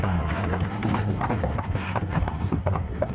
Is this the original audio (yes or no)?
no